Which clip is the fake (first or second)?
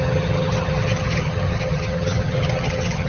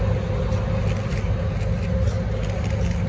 first